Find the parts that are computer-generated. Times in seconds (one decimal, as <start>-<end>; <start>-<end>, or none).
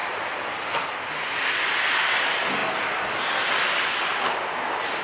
none